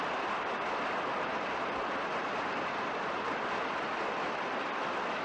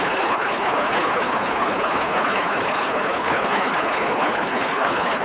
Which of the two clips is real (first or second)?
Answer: first